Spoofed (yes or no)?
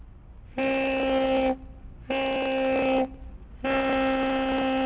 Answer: no